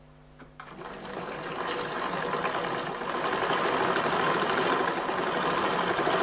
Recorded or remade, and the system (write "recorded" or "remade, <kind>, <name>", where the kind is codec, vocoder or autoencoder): recorded